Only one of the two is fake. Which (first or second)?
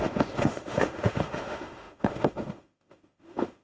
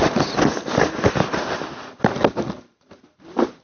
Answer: first